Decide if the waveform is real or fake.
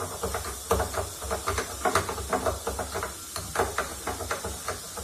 real